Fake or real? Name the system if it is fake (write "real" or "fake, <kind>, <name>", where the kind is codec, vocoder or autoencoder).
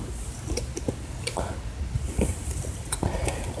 real